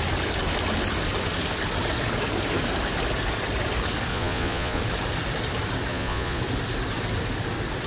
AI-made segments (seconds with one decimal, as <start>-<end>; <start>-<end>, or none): 4.1-4.8; 5.9-6.4